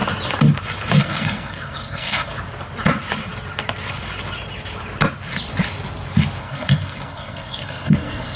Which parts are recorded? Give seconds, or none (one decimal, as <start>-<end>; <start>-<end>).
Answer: 0.0-1.0; 2.3-6.4